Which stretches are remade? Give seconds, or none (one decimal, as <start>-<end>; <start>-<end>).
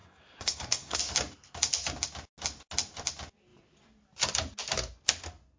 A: 0.0-1.0